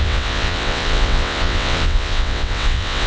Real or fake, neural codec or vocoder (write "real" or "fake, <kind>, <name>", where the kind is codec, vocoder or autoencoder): fake, vocoder, WaveNeXt